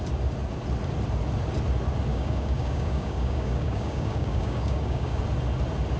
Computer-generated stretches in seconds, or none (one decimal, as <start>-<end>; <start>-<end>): 2.1-5.2